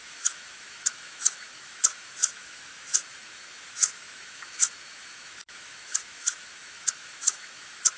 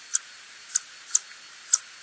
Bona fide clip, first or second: second